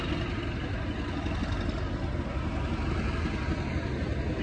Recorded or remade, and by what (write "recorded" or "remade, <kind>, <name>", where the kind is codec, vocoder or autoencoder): recorded